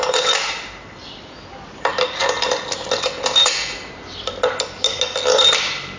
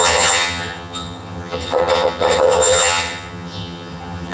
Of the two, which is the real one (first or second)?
first